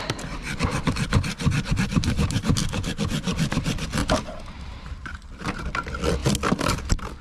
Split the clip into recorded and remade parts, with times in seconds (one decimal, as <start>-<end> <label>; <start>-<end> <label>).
0.0-1.9 recorded; 1.9-3.0 remade; 3.0-4.0 recorded; 4.0-5.6 remade; 5.6-7.2 recorded